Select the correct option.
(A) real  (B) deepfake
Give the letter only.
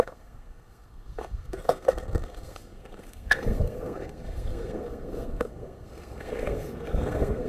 B